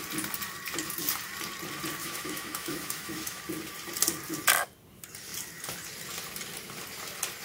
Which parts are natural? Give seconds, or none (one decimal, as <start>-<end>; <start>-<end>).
0.0-2.0; 3.4-7.4